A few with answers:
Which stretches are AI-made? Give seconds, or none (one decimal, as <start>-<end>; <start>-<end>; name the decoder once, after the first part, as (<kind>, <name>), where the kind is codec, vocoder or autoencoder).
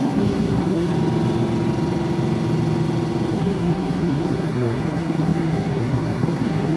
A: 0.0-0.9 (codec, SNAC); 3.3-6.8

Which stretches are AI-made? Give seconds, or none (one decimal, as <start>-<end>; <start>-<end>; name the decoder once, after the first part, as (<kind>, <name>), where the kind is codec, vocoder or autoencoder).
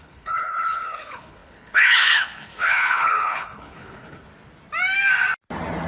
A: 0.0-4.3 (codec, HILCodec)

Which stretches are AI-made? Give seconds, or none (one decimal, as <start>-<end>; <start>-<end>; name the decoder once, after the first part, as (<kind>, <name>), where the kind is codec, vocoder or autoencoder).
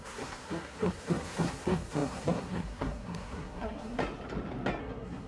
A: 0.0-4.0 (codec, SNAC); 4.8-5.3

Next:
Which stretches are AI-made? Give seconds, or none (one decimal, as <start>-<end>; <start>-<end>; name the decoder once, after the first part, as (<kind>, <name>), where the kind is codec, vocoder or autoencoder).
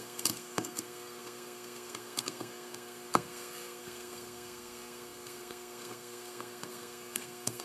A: 0.0-7.6 (codec, SNAC)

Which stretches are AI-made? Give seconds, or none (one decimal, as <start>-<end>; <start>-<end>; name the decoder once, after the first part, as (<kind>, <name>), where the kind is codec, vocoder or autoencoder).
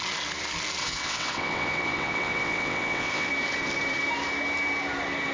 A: 0.8-3.3 (vocoder, WaveNeXt)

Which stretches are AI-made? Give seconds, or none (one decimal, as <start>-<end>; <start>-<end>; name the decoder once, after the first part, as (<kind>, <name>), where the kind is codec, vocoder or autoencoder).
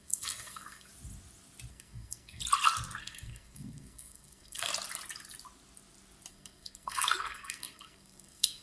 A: 0.0-0.9 (codec, SNAC); 1.7-2.4; 3.0-4.7; 6.3-8.6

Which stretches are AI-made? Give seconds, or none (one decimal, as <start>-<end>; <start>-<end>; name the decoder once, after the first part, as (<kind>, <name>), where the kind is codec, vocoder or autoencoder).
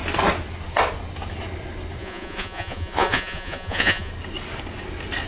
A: 2.0-4.1 (vocoder, Vocos)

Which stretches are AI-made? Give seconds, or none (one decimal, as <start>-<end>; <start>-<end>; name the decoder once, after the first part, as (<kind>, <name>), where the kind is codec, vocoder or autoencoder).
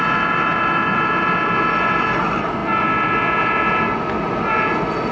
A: none